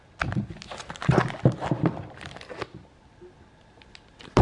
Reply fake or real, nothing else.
real